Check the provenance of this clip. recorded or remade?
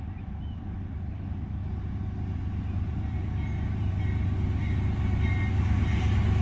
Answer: recorded